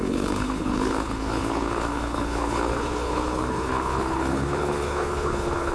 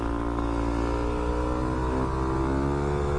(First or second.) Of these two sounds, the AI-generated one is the first